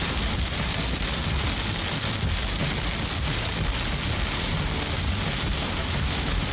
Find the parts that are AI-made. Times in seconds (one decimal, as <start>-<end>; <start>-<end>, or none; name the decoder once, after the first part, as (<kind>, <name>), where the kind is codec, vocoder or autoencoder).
5.8-6.5 (autoencoder, DAC-VAE)